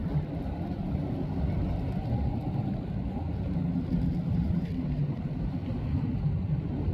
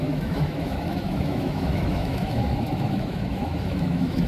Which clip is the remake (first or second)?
second